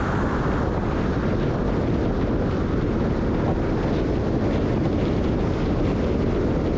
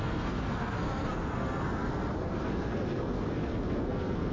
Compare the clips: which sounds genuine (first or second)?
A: first